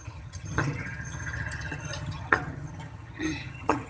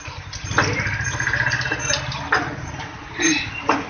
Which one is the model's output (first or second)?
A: first